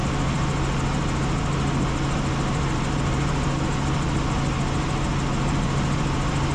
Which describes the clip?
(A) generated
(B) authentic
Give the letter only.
B